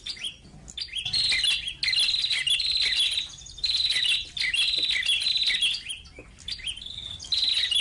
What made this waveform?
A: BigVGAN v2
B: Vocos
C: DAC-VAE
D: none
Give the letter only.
D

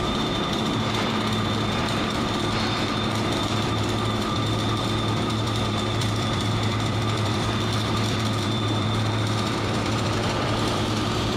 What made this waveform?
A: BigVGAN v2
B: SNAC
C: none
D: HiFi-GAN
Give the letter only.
A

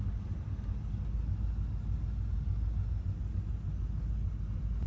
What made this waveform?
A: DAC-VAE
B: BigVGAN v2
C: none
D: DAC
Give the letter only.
C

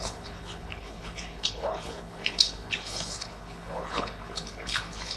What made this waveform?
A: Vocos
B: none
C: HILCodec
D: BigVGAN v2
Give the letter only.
C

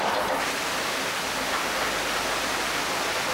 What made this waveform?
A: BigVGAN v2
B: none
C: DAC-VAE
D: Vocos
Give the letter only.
B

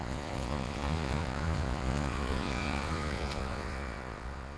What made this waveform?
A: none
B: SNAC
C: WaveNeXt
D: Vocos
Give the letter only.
D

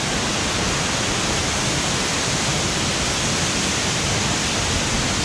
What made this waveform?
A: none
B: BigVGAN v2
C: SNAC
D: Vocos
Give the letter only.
A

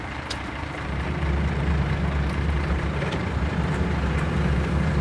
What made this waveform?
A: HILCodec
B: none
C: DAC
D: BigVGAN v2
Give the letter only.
D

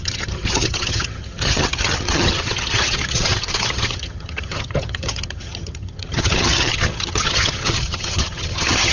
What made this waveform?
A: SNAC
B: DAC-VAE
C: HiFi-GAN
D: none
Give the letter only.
C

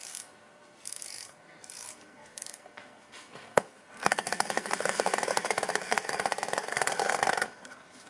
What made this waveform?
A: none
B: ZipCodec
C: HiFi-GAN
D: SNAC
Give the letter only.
D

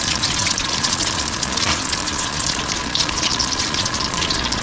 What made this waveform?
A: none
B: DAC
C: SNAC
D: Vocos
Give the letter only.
D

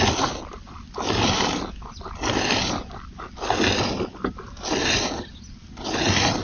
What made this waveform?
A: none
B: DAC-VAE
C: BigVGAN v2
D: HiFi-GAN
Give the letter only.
A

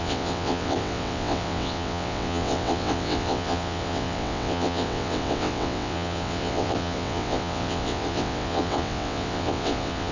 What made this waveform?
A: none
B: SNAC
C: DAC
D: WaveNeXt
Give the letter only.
D